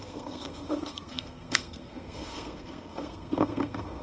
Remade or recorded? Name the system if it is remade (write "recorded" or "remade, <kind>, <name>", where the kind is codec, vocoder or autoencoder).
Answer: remade, codec, SNAC